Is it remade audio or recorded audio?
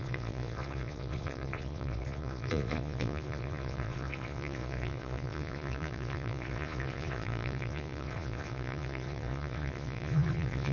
remade